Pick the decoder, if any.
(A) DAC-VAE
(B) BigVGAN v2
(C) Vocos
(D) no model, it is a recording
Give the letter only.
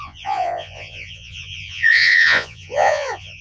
C